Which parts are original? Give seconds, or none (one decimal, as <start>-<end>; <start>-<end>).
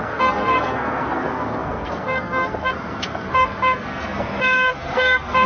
none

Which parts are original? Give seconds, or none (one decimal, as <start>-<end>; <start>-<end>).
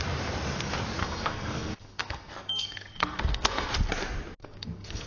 0.0-1.0; 3.7-4.4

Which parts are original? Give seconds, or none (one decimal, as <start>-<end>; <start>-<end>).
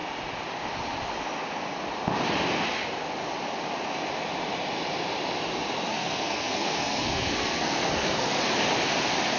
0.0-5.9; 8.4-9.4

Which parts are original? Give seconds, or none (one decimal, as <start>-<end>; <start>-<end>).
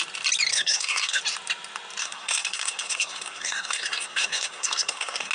0.0-0.5; 1.2-2.0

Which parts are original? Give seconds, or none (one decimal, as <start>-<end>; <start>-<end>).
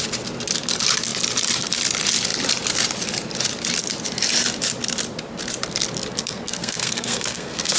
0.0-6.2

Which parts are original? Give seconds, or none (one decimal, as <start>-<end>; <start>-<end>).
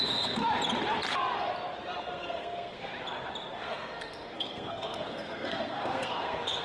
0.4-2.0; 2.9-3.6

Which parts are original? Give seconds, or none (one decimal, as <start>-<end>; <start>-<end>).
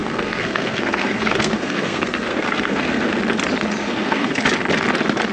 3.2-3.8; 4.4-5.3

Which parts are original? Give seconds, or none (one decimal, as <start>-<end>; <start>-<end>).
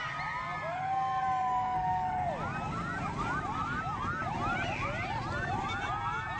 0.0-0.7; 2.3-6.4